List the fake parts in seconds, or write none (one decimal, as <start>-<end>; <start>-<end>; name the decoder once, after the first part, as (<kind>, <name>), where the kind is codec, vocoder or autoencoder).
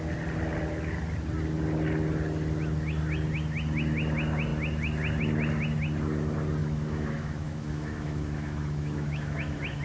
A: 6.6-9.8 (autoencoder, DAC-VAE)